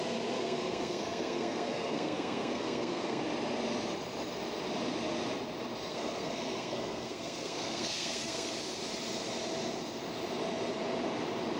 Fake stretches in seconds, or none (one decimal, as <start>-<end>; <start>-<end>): 0.4-3.2; 5.9-8.5